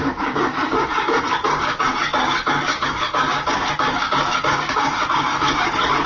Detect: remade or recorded remade